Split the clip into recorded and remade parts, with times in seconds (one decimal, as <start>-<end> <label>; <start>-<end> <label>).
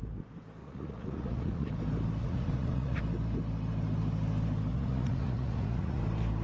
0.0-0.6 recorded; 0.6-1.7 remade; 1.7-2.2 recorded; 2.2-3.0 remade; 3.0-4.7 recorded; 4.7-6.0 remade; 6.0-6.4 recorded